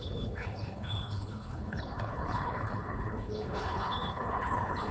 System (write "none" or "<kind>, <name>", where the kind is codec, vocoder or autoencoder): codec, HILCodec